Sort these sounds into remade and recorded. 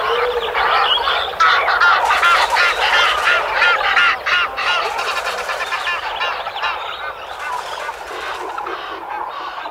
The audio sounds recorded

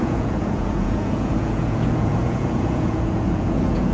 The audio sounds remade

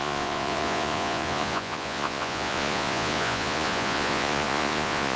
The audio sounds remade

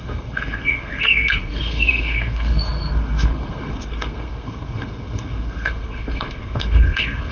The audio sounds remade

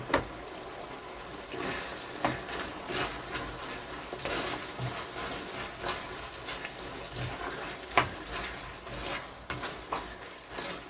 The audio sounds recorded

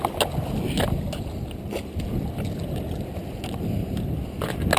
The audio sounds recorded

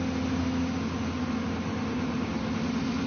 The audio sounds recorded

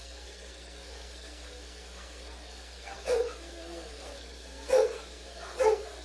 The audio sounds remade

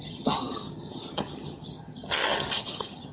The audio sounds remade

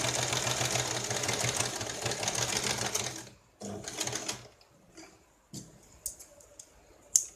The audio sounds recorded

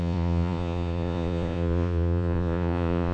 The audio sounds remade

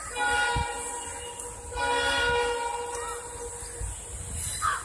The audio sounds recorded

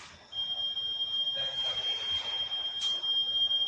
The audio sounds recorded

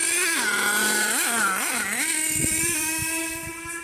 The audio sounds remade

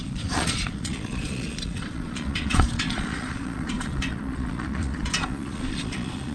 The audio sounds remade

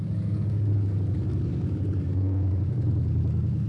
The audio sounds remade